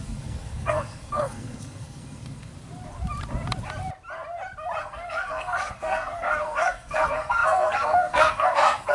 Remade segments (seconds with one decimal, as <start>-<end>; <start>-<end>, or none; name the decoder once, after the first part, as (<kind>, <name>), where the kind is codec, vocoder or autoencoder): 0.0-2.5 (codec, SNAC); 4.8-8.9